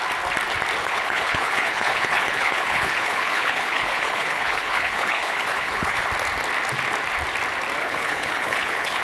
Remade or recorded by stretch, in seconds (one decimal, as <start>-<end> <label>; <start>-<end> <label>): 0.0-0.8 recorded; 0.8-6.1 remade; 6.1-7.8 recorded; 7.8-9.0 remade